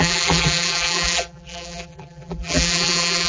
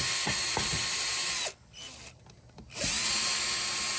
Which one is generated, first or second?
first